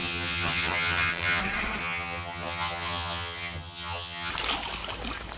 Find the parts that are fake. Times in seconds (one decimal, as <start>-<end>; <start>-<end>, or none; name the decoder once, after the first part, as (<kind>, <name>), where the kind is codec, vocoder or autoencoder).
0.0-1.4 (vocoder, HiFi-GAN); 1.8-4.3

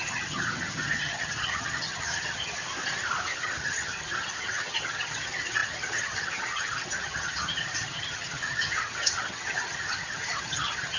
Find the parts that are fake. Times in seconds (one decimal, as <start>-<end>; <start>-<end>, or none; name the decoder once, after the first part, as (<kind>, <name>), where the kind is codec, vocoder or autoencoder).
0.0-2.6 (vocoder, HiFi-GAN); 3.3-11.0

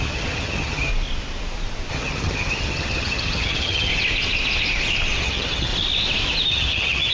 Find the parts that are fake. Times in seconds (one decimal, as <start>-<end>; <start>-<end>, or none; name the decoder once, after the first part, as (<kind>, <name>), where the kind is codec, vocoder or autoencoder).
0.0-0.9 (vocoder, HiFi-GAN); 1.9-3.9; 5.2-5.7; 6.5-7.1

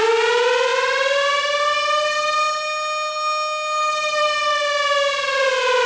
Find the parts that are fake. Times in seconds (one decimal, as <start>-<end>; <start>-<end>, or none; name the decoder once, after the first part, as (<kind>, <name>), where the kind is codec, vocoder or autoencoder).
none

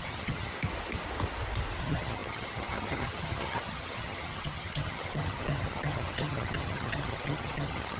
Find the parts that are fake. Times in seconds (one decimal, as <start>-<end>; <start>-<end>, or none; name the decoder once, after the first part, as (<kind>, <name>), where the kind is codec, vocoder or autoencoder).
0.0-0.5 (vocoder, HiFi-GAN); 1.8-8.0